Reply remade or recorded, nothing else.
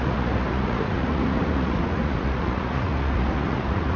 remade